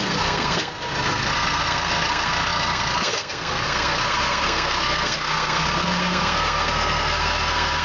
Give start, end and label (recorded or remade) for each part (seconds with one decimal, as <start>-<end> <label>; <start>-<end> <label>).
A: 0.0-7.8 remade